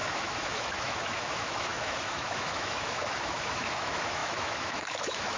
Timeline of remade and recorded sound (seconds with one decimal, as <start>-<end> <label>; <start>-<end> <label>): 0.0-5.4 remade